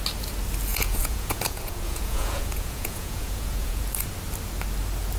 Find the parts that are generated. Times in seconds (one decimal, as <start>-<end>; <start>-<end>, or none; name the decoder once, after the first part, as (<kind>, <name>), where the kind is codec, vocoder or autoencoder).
0.7-3.8 (vocoder, Vocos)